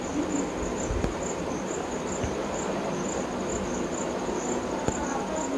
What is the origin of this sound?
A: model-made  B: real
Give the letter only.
B